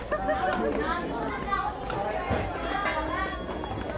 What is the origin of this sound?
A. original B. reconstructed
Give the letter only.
A